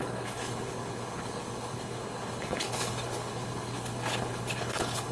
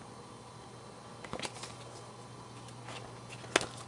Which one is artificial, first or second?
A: first